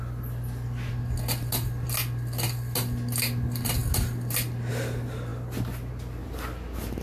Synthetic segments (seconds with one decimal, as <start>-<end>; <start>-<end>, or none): none